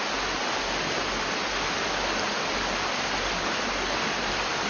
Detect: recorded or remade recorded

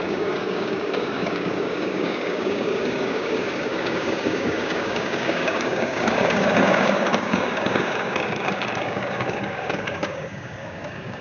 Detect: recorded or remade remade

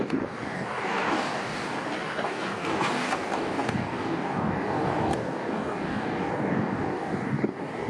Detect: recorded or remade remade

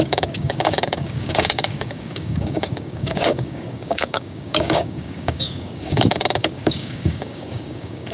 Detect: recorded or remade remade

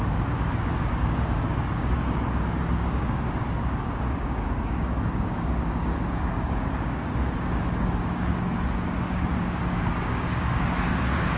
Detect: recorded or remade remade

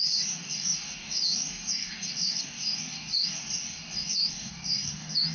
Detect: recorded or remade remade